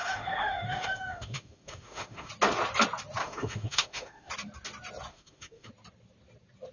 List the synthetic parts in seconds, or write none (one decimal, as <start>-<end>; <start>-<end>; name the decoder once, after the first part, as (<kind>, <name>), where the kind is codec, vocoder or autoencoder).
0.0-2.3 (autoencoder, DAC-VAE); 3.2-4.3; 5.1-5.7

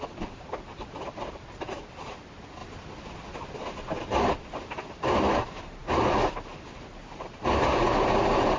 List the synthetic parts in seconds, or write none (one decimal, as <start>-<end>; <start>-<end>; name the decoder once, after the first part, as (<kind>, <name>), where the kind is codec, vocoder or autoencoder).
none

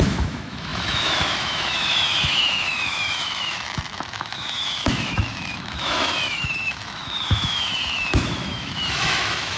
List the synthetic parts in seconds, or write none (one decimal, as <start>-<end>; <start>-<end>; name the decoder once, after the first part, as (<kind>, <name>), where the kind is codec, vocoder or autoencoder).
0.0-9.6 (autoencoder, DAC-VAE)

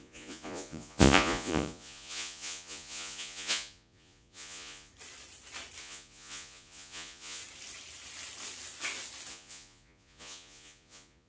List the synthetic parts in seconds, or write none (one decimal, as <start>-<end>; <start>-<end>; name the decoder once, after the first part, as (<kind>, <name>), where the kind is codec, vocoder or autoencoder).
0.0-4.9 (vocoder, Vocos); 5.8-7.4; 9.3-11.3